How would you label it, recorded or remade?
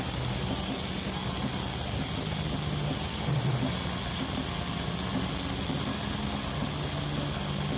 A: recorded